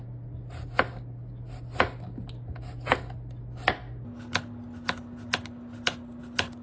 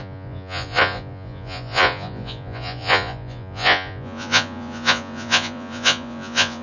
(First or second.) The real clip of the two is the first